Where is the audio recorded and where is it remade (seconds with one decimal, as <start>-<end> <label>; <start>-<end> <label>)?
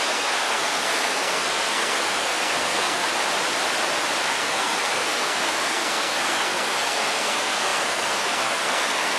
0.0-3.0 remade; 3.0-4.2 recorded; 4.2-9.2 remade